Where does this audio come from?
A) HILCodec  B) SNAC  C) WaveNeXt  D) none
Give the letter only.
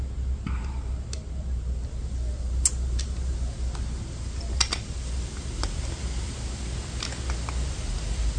D